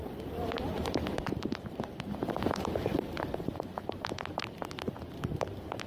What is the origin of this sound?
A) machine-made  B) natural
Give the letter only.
A